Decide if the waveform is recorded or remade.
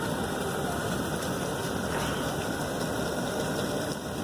recorded